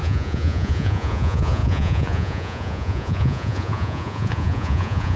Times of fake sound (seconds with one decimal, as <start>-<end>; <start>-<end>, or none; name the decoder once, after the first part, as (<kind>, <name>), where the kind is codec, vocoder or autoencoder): 0.0-5.2 (vocoder, Vocos)